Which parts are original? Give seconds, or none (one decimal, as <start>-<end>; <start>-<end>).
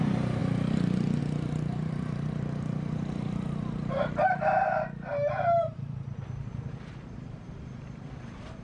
0.4-1.2